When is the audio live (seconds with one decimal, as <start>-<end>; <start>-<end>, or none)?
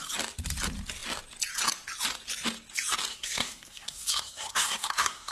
0.0-3.1